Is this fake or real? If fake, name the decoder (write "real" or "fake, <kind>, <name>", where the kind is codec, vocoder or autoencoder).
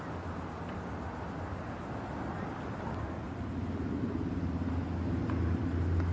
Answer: real